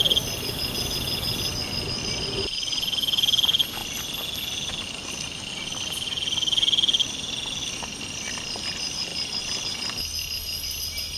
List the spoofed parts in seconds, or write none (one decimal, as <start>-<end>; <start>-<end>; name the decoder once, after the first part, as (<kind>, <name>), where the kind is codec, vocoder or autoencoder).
none